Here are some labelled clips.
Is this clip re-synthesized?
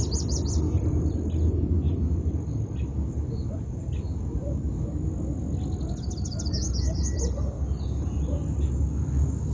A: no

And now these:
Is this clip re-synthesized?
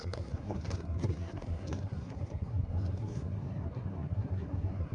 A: yes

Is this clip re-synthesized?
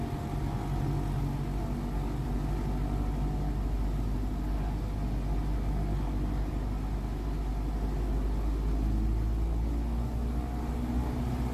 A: no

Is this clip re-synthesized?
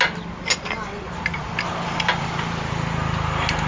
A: no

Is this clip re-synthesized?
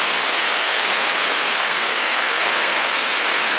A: yes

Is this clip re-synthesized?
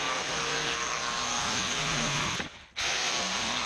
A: no